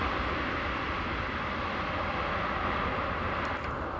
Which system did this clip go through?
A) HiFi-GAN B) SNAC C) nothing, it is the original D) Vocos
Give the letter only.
C